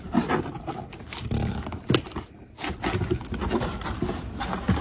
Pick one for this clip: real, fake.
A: real